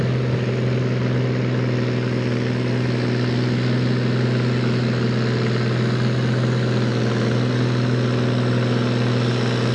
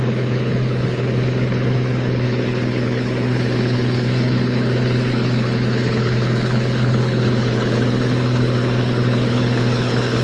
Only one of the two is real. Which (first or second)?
first